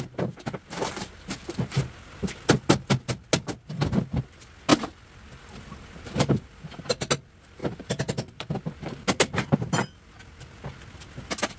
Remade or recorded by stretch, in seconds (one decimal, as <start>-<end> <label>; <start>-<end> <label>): 0.0-4.7 recorded; 4.7-6.8 remade; 6.8-7.6 recorded; 7.6-8.5 remade; 8.5-11.6 recorded